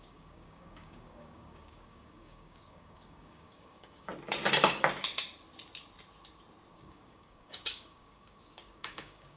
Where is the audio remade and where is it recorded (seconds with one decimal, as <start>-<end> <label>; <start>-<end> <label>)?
0.0-4.1 remade; 4.1-6.7 recorded; 6.7-9.4 remade